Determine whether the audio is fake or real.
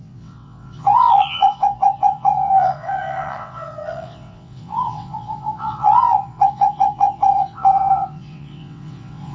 fake